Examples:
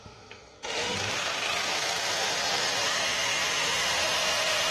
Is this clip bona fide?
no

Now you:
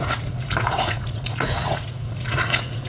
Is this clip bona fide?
no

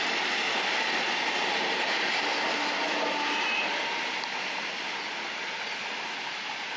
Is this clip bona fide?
yes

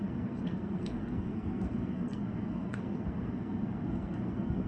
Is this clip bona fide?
no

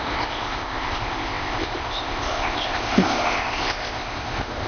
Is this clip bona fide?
no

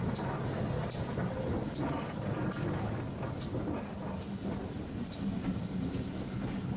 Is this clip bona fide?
yes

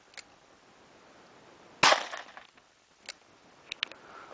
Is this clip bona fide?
yes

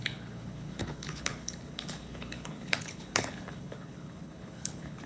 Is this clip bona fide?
no